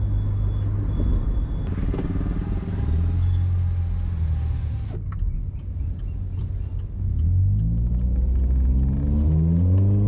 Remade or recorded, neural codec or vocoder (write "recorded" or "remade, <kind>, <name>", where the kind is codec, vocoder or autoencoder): recorded